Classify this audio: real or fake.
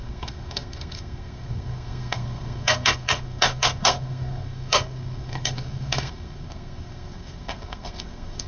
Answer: fake